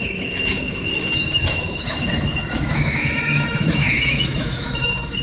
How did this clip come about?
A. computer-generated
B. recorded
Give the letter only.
A